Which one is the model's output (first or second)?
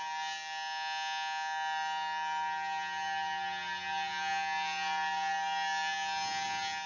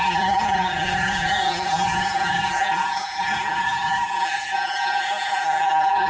second